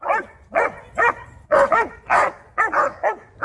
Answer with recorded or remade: remade